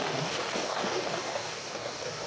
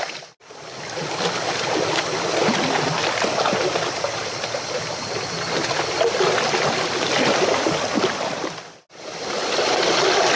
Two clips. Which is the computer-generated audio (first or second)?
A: first